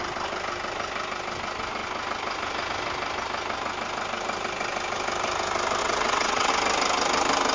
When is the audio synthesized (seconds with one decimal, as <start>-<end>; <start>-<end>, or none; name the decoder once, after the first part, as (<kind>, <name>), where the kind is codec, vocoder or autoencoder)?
5.8-6.5 (vocoder, WaveNeXt)